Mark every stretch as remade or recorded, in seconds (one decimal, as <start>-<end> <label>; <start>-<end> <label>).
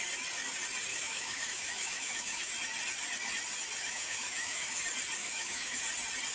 0.0-0.9 recorded; 0.9-2.5 remade; 2.5-3.8 recorded; 3.8-4.8 remade; 4.8-5.2 recorded; 5.2-5.8 remade; 5.8-6.3 recorded